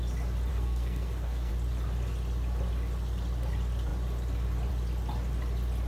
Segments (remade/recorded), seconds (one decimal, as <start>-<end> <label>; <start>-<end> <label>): 0.0-0.5 recorded; 0.5-1.5 remade; 1.5-5.9 recorded